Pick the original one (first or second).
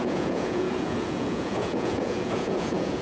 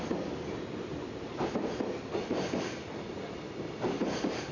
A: second